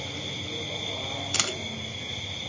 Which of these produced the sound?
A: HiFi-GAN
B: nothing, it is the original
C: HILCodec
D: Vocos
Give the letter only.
B